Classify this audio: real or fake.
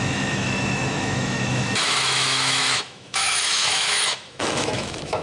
fake